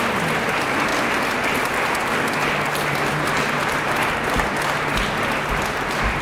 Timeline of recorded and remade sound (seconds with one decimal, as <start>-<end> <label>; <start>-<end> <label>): 0.0-3.6 recorded; 3.6-4.9 remade; 4.9-6.2 recorded